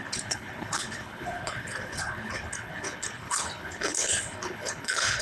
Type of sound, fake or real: fake